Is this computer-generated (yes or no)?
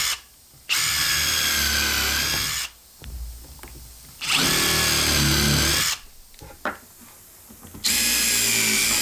no